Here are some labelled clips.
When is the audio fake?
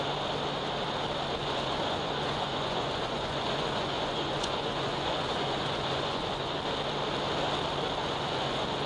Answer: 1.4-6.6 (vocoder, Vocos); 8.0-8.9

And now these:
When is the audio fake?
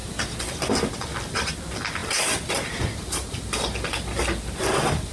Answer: none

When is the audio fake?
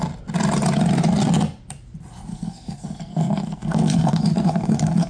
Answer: 2.3-5.1 (codec, SNAC)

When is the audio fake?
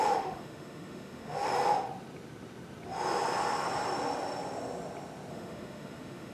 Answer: 0.0-1.5 (autoencoder, DAC-VAE); 5.3-6.3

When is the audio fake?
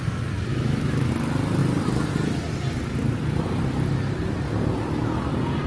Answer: 0.5-1.1 (autoencoder, DAC-VAE)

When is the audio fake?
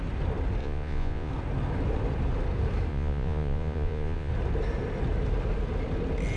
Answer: 0.6-1.3 (vocoder, Vocos); 2.9-4.3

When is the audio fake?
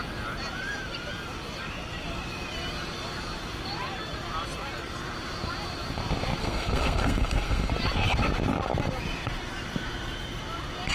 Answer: 6.4-7.7 (codec, SNAC)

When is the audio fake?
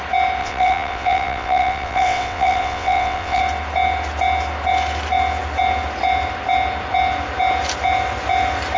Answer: 0.4-3.4 (vocoder, WaveNeXt)